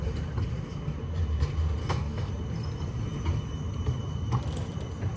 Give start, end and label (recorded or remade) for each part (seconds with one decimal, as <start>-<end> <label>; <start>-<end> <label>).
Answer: 0.0-1.8 recorded; 1.8-2.3 remade; 2.3-5.2 recorded